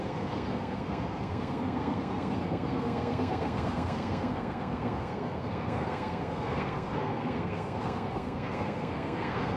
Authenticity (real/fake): fake